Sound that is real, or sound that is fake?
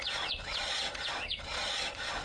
fake